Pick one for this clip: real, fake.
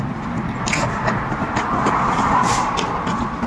real